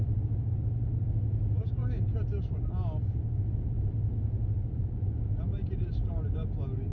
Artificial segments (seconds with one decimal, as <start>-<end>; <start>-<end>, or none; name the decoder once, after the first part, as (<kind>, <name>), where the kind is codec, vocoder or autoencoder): none